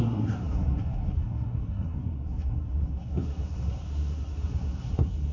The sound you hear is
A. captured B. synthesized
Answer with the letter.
B